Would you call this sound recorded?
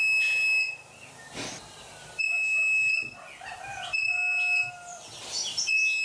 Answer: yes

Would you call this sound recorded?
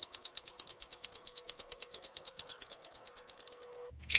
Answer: no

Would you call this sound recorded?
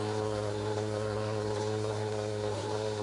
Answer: no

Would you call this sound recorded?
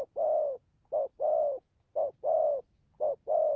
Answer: yes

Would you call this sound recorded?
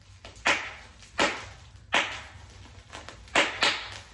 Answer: yes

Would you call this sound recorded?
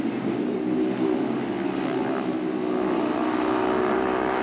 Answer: yes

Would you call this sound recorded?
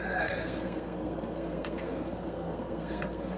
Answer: no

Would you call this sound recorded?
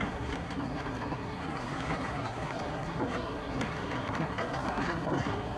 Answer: no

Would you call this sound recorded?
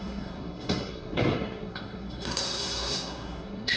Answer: no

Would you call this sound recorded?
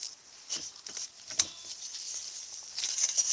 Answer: yes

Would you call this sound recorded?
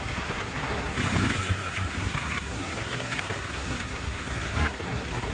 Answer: no